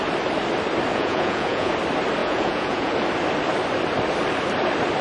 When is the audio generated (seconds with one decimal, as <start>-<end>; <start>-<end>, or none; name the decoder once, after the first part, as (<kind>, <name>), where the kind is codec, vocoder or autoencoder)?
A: 0.9-1.7 (vocoder, Vocos); 2.2-2.9

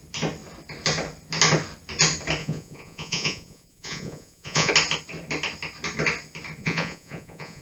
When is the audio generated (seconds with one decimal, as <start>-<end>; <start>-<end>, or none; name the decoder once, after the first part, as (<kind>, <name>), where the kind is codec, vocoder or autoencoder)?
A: 2.4-4.7 (vocoder, Vocos); 6.6-7.6

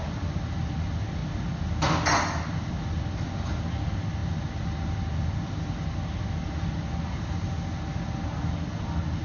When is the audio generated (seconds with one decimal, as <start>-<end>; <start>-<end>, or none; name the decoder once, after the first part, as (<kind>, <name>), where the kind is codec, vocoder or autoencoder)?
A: none